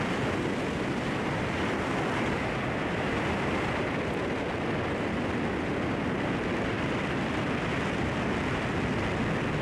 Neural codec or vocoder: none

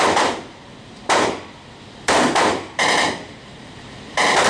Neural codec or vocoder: vocoder, BigVGAN v2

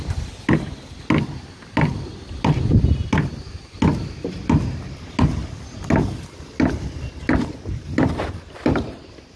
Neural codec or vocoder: none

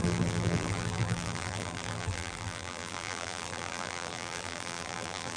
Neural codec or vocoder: vocoder, BigVGAN v2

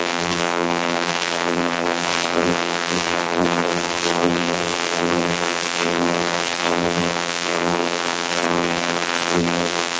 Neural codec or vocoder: vocoder, BigVGAN v2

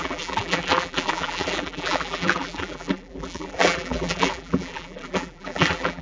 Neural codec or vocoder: vocoder, BigVGAN v2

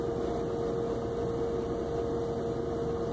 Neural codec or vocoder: none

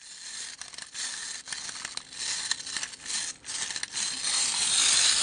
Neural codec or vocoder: none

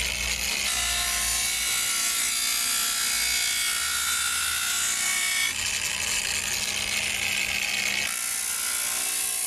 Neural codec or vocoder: none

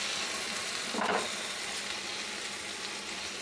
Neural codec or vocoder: vocoder, BigVGAN v2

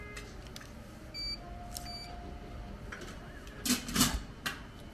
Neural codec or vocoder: none